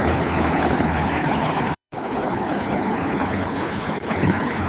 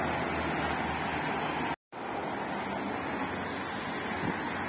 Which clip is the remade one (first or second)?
first